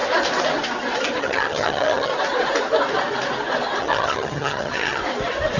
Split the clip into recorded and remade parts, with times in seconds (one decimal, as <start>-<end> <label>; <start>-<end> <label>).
0.0-1.2 recorded; 1.2-2.1 remade; 2.1-3.8 recorded; 3.8-5.0 remade; 5.0-5.6 recorded